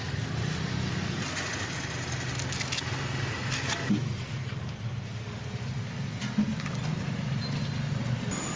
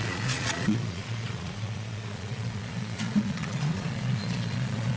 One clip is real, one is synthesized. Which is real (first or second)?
first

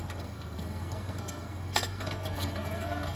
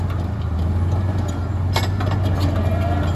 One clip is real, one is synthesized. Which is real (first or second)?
second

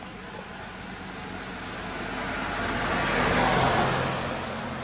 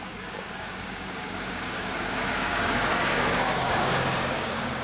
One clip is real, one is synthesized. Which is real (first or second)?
first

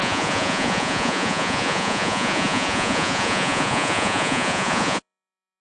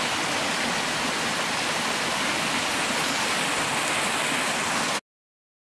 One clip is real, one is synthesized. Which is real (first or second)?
second